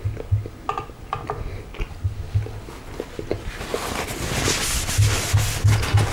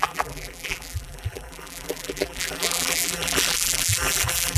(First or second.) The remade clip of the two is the second